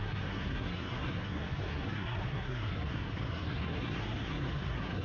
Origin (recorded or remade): remade